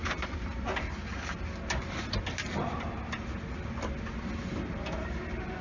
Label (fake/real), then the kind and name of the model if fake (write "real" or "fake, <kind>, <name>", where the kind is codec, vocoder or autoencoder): real